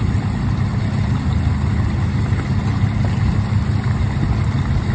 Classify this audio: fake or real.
real